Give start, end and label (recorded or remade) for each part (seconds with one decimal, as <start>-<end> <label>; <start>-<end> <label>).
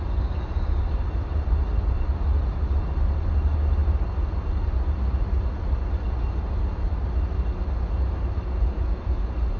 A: 0.0-9.6 recorded